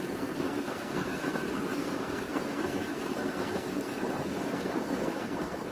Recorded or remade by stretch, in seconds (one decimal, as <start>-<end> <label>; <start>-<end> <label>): 0.0-5.7 remade